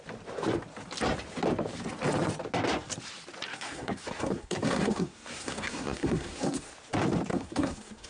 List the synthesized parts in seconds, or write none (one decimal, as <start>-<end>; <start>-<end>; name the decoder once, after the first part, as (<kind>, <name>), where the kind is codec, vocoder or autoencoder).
3.5-6.7 (codec, SNAC); 7.3-8.1